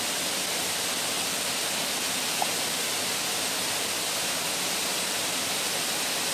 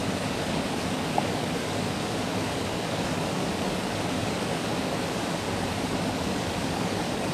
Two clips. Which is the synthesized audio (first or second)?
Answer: second